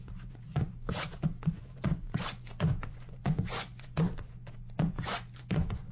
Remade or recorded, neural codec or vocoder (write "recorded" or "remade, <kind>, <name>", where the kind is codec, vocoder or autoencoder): remade, vocoder, Vocos